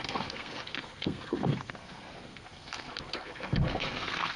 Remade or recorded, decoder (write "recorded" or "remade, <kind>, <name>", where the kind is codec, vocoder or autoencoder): remade, codec, SNAC